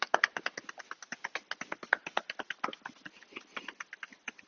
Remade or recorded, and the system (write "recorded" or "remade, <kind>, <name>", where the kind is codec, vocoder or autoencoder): recorded